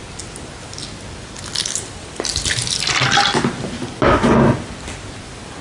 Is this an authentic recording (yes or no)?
yes